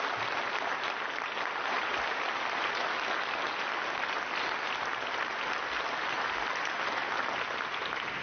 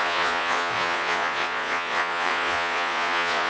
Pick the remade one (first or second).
second